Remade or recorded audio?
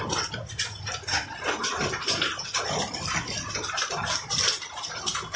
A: recorded